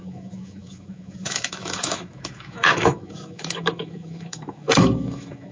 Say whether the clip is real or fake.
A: fake